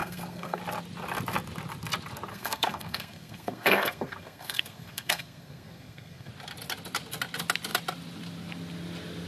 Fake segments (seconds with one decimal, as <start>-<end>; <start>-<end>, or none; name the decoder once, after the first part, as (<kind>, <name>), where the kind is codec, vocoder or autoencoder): 0.0-0.6 (codec, SNAC); 2.3-6.3